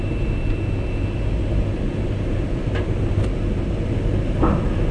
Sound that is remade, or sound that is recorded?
recorded